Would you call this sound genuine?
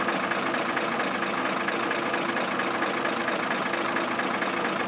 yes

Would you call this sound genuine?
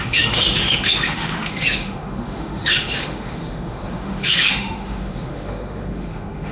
no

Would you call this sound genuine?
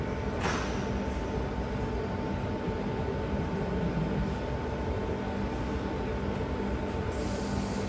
yes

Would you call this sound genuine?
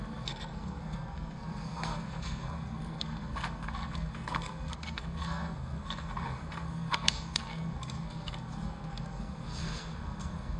no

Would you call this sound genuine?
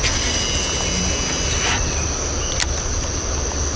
yes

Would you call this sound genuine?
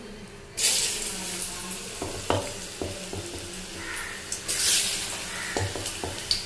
yes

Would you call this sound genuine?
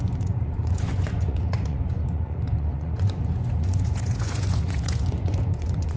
no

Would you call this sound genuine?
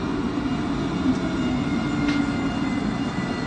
yes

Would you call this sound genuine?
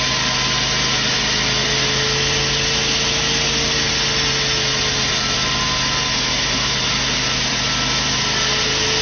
yes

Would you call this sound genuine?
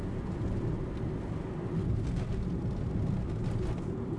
yes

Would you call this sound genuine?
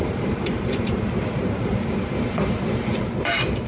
no